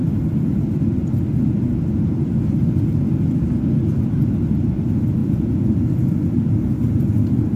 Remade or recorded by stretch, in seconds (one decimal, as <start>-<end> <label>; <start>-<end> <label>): 0.0-5.2 recorded; 5.2-6.1 remade; 6.1-7.6 recorded